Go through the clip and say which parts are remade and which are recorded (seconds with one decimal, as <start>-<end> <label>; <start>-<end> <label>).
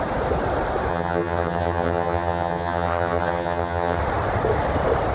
0.0-0.9 recorded; 0.9-4.0 remade; 4.0-5.1 recorded